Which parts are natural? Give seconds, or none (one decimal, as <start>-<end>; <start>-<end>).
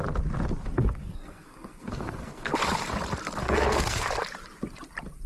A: 0.0-1.0; 2.5-3.4; 4.1-5.3